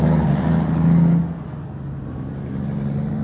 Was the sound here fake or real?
real